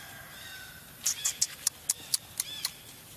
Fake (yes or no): no